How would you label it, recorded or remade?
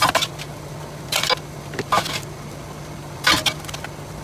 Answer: recorded